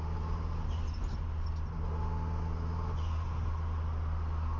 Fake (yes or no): no